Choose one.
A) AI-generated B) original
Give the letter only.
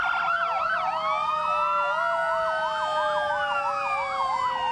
B